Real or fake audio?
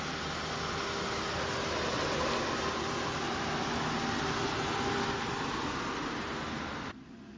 real